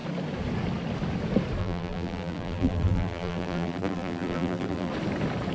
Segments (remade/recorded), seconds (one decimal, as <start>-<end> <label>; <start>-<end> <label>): 0.0-1.6 recorded; 1.6-4.9 remade; 4.9-5.5 recorded